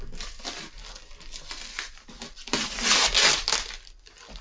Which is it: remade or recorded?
recorded